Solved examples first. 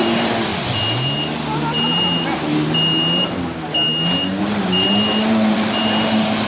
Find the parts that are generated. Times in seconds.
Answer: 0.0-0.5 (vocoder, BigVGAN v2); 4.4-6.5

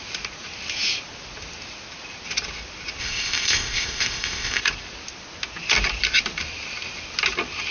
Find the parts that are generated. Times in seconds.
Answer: 3.0-4.6 (codec, ZipCodec)

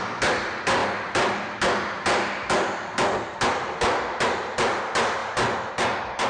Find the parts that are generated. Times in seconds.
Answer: none